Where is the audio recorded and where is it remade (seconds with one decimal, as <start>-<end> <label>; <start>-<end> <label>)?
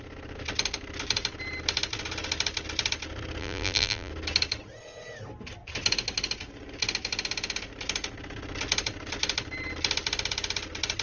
0.0-3.4 recorded; 3.4-4.1 remade; 4.1-11.0 recorded